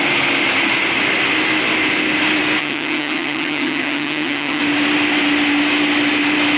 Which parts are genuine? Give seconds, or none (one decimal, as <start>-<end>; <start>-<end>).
0.0-2.6; 4.6-6.6